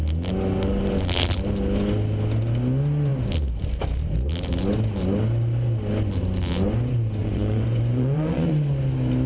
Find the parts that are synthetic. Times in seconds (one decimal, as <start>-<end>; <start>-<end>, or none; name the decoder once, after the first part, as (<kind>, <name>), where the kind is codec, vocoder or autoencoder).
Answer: 7.2-8.5 (vocoder, Vocos)